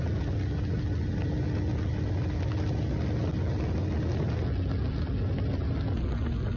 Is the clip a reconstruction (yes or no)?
no